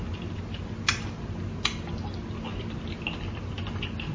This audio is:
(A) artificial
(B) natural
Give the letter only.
B